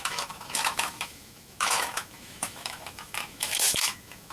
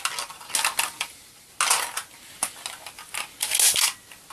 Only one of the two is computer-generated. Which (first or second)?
first